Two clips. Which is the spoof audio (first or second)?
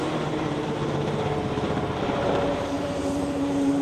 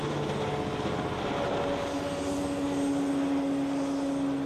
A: first